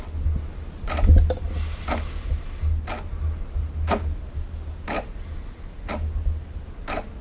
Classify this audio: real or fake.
real